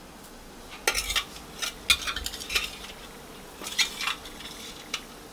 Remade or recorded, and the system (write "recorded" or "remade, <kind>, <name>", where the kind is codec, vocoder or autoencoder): recorded